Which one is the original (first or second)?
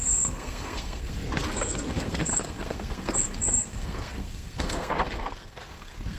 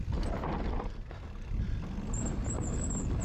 second